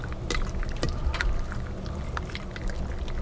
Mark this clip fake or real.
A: real